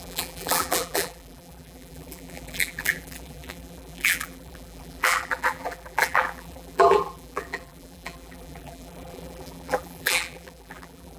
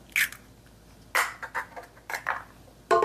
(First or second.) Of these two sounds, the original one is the second